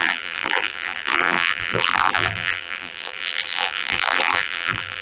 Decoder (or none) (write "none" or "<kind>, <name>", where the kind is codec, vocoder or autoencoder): vocoder, BigVGAN v2